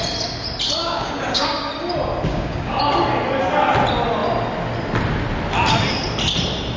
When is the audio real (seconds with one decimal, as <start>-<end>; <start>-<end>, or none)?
0.0-0.8; 1.7-2.3; 2.8-6.8